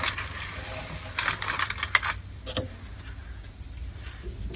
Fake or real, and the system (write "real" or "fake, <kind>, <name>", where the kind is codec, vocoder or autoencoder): real